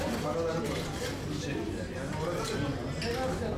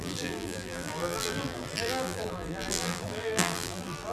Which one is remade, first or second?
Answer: second